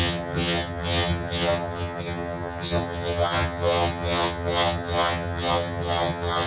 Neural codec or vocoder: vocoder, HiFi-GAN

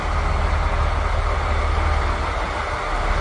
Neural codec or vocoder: none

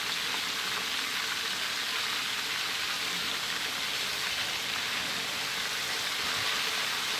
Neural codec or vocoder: none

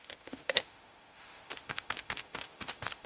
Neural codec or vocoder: autoencoder, DAC-VAE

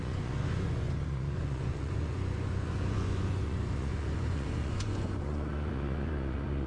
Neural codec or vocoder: vocoder, Vocos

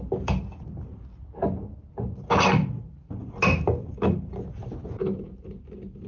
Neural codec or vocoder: none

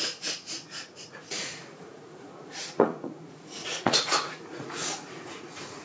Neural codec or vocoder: vocoder, Vocos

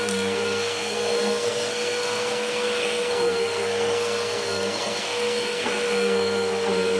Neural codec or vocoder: codec, SNAC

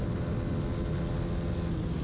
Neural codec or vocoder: none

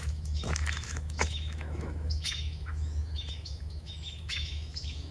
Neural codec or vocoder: autoencoder, DAC-VAE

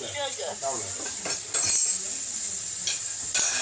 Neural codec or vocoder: none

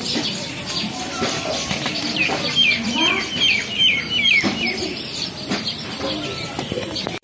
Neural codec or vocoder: vocoder, BigVGAN v2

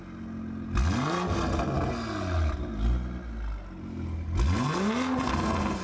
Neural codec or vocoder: none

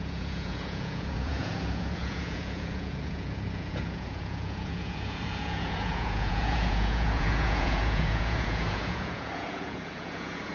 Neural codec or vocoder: vocoder, Vocos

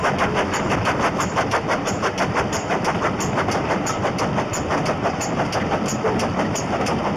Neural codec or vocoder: vocoder, BigVGAN v2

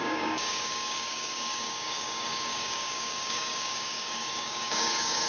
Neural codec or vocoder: codec, DAC